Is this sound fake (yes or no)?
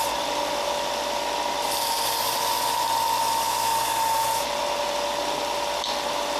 no